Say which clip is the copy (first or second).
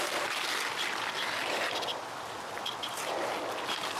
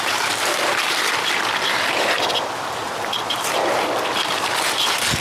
second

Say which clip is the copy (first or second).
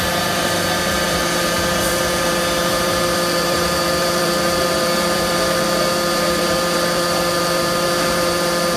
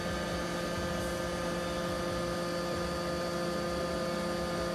first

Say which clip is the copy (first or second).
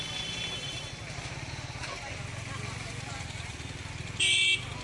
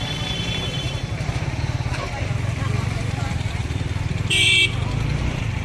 second